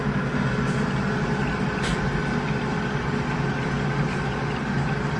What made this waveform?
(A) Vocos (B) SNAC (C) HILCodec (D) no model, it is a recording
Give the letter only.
D